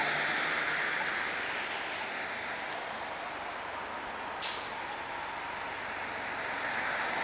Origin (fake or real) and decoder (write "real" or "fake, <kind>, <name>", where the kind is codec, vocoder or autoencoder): real